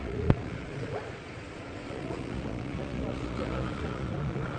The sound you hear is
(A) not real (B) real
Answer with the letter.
A